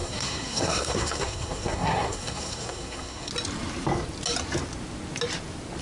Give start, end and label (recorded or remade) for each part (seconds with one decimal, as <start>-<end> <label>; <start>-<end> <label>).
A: 0.0-3.3 remade; 3.3-5.8 recorded